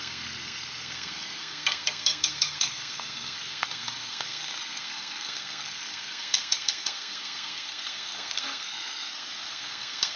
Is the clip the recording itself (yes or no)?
no